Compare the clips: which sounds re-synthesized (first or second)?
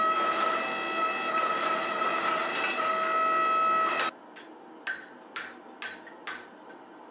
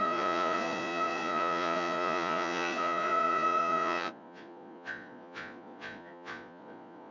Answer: second